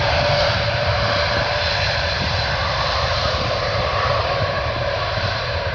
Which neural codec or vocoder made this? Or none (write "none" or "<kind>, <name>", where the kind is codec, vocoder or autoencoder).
vocoder, BigVGAN v2